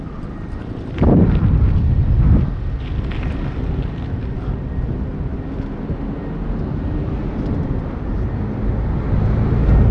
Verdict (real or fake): real